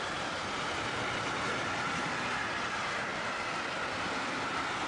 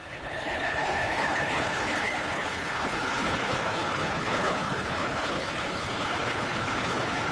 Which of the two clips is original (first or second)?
first